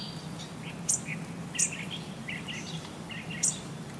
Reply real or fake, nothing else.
real